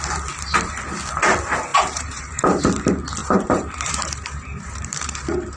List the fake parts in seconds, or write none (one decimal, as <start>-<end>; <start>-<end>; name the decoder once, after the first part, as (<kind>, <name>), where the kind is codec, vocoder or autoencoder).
1.7-2.6 (vocoder, BigVGAN v2); 3.2-5.6